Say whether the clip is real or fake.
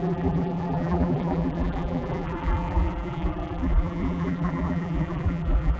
fake